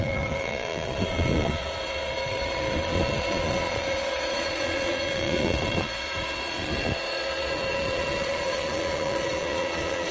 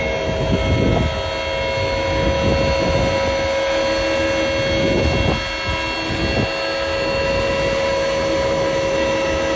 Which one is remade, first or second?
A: first